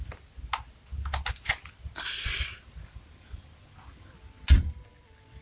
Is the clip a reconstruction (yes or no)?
no